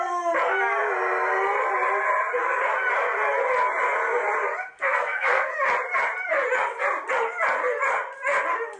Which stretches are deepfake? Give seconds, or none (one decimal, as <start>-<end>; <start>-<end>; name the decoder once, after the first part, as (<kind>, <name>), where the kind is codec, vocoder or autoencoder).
4.6-5.5 (codec, SNAC)